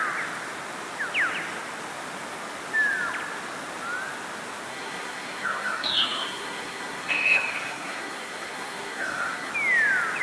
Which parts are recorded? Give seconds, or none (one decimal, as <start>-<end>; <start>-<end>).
0.0-4.7; 9.5-10.2